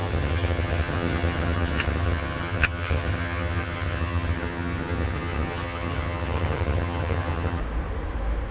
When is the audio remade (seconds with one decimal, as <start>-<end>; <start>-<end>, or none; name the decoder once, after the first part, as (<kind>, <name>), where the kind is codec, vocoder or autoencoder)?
0.0-7.6 (vocoder, HiFi-GAN)